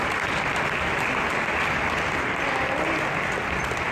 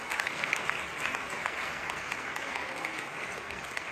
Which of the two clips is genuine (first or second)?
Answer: first